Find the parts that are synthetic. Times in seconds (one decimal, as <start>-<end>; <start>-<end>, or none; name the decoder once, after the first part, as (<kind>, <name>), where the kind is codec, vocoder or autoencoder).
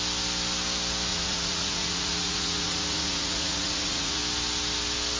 1.1-4.2 (vocoder, Vocos)